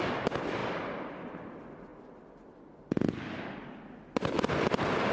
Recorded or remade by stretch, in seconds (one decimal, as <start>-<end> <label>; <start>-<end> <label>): 0.0-5.1 recorded